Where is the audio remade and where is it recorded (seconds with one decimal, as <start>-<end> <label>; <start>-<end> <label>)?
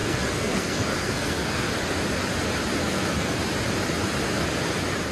0.0-1.7 remade; 1.7-2.8 recorded; 2.8-3.4 remade; 3.4-5.1 recorded